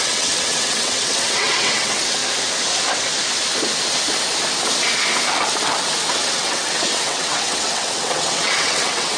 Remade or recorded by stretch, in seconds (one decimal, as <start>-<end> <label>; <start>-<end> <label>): 0.0-2.2 remade; 2.2-6.1 recorded; 6.1-9.2 remade